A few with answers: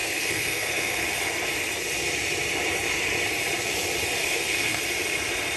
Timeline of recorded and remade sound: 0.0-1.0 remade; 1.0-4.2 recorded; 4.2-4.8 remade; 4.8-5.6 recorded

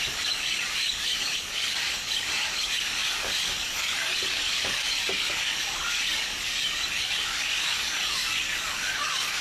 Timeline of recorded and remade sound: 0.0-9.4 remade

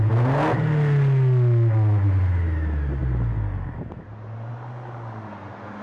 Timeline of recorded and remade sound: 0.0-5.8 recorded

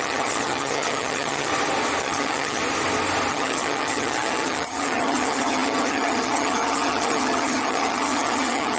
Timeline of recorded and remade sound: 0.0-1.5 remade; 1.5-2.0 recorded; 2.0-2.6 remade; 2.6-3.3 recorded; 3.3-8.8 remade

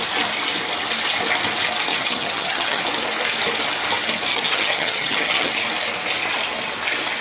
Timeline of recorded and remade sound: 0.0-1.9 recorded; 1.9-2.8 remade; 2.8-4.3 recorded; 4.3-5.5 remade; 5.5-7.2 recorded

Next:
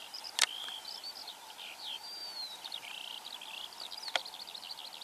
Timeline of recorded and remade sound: 0.0-0.7 remade; 0.7-2.2 recorded; 2.2-3.3 remade; 3.3-5.0 recorded